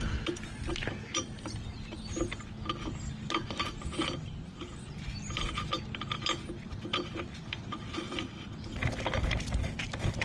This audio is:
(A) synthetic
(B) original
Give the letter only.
B